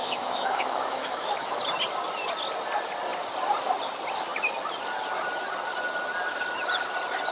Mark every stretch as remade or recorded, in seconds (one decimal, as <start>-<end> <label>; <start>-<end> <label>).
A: 0.0-1.6 remade; 1.6-7.3 recorded